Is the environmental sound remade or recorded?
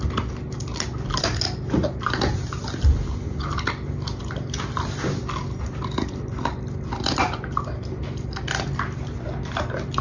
recorded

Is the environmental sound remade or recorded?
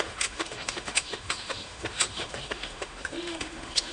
remade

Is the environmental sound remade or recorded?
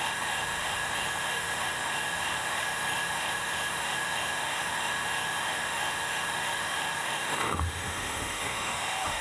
remade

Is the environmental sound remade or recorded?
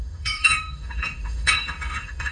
remade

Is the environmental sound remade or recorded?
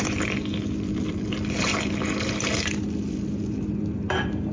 recorded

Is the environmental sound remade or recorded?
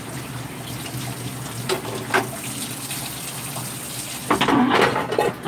recorded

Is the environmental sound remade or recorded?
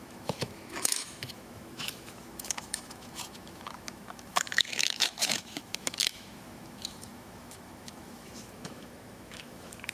remade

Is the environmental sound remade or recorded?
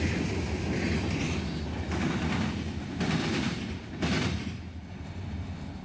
recorded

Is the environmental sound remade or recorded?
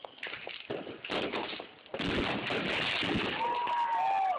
recorded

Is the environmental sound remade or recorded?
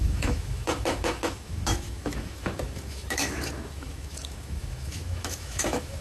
remade